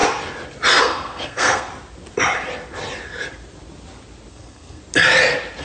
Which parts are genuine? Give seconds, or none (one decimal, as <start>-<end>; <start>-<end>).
0.0-0.8; 1.7-4.3; 4.8-5.6